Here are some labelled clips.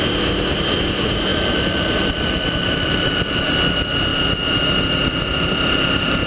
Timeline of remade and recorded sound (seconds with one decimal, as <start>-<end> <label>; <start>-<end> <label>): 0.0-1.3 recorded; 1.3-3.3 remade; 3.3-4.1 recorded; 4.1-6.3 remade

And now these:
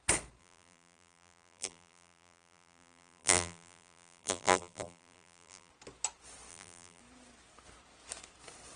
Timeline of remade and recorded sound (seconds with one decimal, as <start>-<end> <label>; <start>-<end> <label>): 0.0-0.4 recorded; 0.4-5.7 remade; 5.7-6.5 recorded; 6.5-7.0 remade; 7.0-8.8 recorded

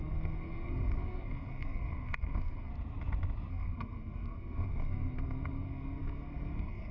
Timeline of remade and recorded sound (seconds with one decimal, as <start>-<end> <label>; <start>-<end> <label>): 0.0-2.7 remade; 2.7-3.5 recorded; 3.5-6.9 remade

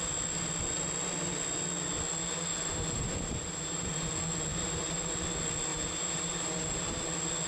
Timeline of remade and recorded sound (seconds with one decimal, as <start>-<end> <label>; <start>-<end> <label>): 0.0-2.5 recorded; 2.5-4.1 remade; 4.1-4.5 recorded; 4.5-5.1 remade; 5.1-5.7 recorded; 5.7-6.8 remade; 6.8-7.5 recorded

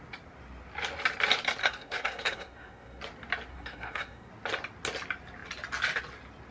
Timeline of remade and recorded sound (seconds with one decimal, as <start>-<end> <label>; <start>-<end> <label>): 0.0-1.6 recorded; 1.6-3.0 remade; 3.0-3.5 recorded; 3.5-4.3 remade; 4.3-6.5 recorded

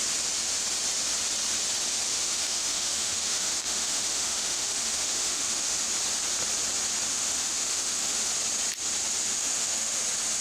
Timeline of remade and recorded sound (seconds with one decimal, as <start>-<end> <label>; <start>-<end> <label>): 0.0-2.1 recorded; 2.1-5.8 remade; 5.8-7.1 recorded; 7.1-8.3 remade; 8.3-9.3 recorded; 9.3-10.0 remade; 10.0-10.4 recorded